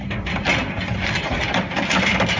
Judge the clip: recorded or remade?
recorded